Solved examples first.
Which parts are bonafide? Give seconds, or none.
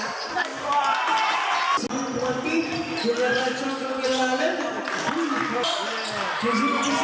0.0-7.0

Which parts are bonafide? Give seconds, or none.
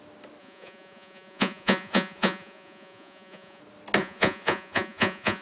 0.0-0.4; 3.6-4.0